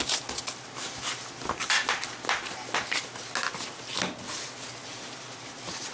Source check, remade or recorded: recorded